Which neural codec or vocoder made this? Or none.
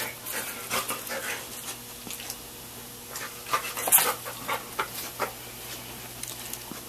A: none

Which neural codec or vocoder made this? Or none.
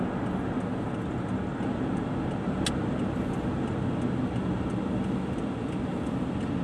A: none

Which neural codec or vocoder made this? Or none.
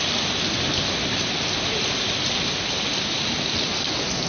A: none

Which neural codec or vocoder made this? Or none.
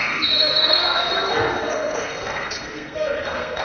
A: codec, SNAC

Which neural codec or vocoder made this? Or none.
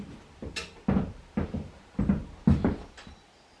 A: none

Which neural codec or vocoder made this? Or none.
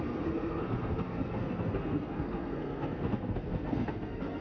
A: codec, SNAC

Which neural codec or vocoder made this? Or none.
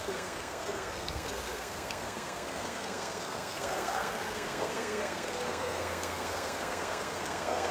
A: codec, SNAC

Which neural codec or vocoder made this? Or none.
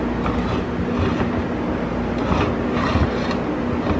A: none